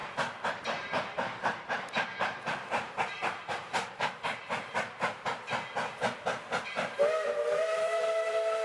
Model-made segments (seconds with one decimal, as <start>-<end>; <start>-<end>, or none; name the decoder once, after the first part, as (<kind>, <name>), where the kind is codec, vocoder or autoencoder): 0.6-8.6 (vocoder, BigVGAN v2)